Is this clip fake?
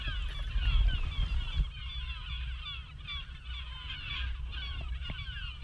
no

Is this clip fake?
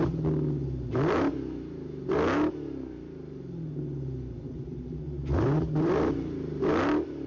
no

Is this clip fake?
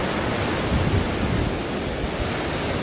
no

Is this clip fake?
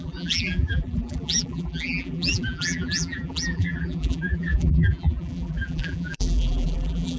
yes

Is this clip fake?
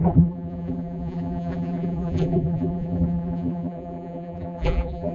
yes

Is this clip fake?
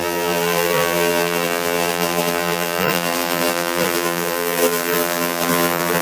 yes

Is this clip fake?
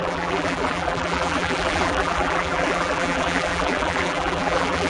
yes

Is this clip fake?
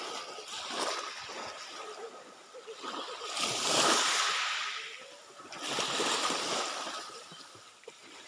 no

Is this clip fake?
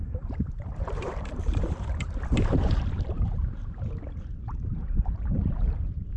yes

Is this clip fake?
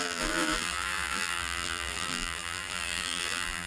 yes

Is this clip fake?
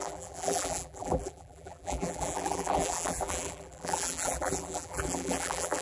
yes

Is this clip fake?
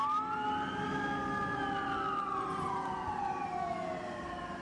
no